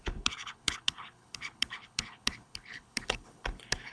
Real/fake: fake